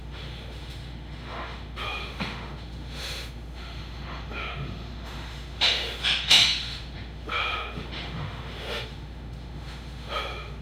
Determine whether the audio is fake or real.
fake